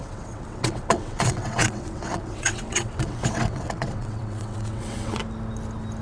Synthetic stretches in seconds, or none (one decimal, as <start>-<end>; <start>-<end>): 0.0-5.2